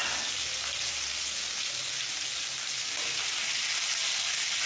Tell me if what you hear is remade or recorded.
recorded